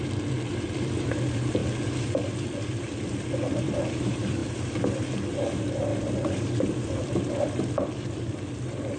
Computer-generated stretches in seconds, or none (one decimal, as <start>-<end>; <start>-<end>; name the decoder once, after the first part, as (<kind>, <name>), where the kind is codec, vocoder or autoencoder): 0.0-9.0 (vocoder, BigVGAN v2)